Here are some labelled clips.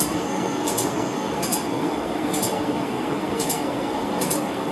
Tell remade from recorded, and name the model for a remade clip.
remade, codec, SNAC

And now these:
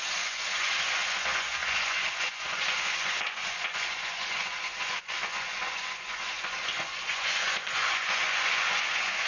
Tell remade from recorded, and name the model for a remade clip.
remade, vocoder, Vocos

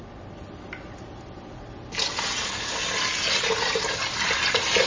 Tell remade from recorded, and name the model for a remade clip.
recorded